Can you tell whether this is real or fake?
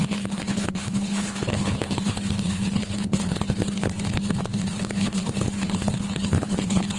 fake